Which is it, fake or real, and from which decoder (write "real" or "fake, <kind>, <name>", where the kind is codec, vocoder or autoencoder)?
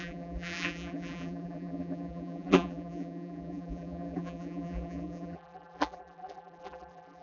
fake, vocoder, BigVGAN v2